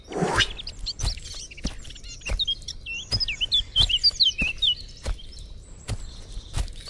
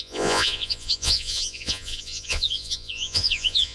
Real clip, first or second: first